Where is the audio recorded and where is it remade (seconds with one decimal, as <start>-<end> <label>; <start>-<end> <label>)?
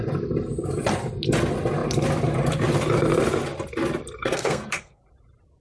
0.0-4.2 recorded; 4.2-5.0 remade; 5.0-5.6 recorded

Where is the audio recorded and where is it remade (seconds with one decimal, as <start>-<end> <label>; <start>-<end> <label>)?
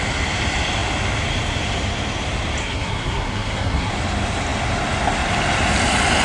0.0-2.6 recorded; 2.6-3.9 remade; 3.9-6.2 recorded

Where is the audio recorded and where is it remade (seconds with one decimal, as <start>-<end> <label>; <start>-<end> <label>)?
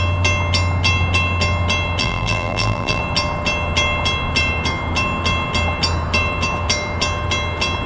0.0-2.0 recorded; 2.0-3.0 remade; 3.0-7.9 recorded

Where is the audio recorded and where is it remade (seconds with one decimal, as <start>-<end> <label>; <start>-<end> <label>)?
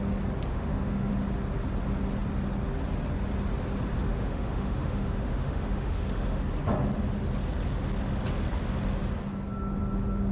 0.0-0.5 recorded; 0.5-1.1 remade; 1.1-4.1 recorded; 4.1-6.4 remade; 6.4-10.3 recorded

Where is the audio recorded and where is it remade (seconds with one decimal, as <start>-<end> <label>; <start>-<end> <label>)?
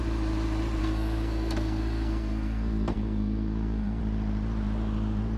0.0-0.8 recorded; 0.8-4.0 remade; 4.0-5.4 recorded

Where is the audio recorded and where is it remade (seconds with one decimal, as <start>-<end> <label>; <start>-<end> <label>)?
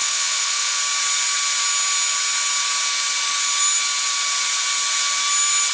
0.0-0.8 remade; 0.8-5.7 recorded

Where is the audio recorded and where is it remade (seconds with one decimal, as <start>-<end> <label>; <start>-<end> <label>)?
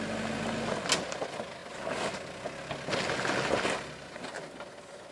0.0-5.1 recorded